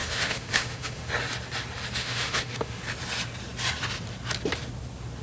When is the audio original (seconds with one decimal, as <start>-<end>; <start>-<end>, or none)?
1.1-2.0; 2.8-5.2